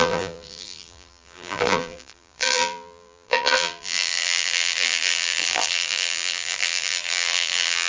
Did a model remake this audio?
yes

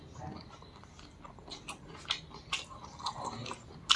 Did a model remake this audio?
no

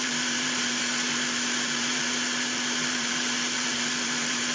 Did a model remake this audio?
yes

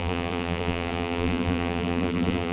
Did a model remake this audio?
yes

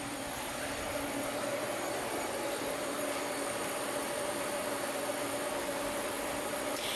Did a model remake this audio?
yes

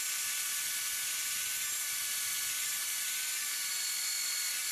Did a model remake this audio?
no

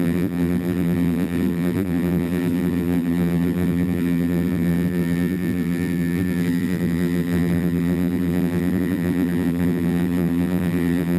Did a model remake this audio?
yes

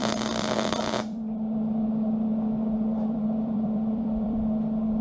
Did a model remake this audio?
yes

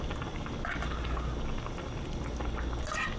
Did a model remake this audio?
no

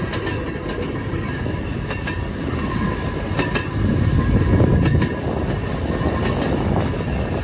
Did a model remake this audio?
no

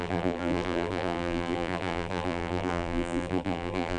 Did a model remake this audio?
yes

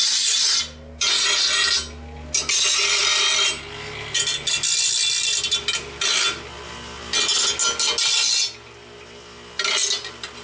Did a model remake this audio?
no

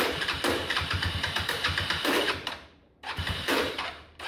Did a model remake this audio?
yes